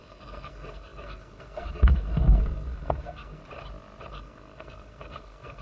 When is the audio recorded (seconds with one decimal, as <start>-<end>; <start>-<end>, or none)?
3.4-4.1